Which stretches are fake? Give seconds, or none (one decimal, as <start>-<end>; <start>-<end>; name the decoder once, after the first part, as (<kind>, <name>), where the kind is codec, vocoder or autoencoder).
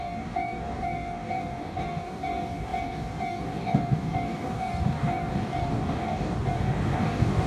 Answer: 0.0-7.5 (codec, DAC)